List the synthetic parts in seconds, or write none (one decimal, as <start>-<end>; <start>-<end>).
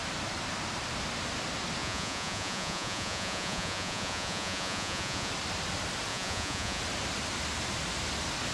1.8-5.3; 6.1-6.8